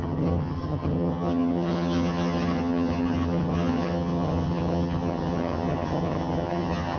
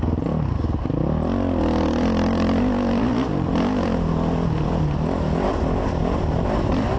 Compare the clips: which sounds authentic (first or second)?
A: second